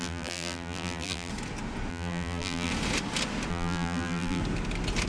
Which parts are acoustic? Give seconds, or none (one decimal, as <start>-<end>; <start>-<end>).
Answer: 1.3-1.9; 2.7-3.5; 4.4-5.1